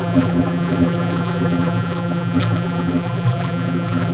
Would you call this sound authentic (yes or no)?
no